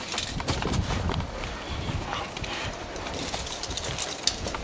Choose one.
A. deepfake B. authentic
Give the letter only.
B